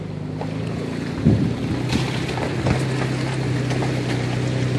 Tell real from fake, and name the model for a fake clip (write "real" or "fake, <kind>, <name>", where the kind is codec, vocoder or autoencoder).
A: real